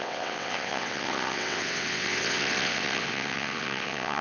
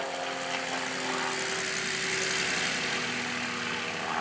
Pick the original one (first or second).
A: second